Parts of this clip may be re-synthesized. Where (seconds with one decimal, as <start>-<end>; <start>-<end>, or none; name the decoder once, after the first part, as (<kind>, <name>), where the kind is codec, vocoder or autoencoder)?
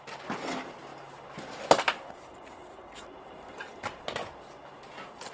3.0-3.6 (vocoder, BigVGAN v2)